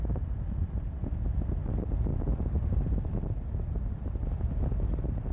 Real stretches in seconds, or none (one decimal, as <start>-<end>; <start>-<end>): 0.0-5.3